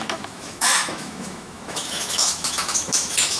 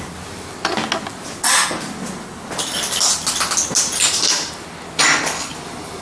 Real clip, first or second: second